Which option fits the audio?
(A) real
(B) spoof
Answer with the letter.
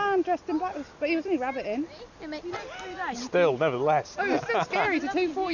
A